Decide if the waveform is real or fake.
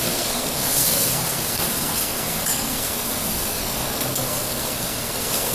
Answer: fake